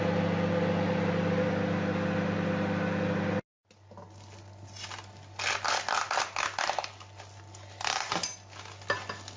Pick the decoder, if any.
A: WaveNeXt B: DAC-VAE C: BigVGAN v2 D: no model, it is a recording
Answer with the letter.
D